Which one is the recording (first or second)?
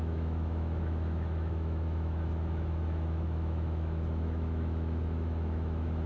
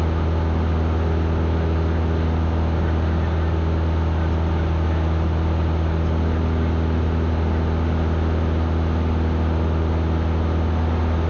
second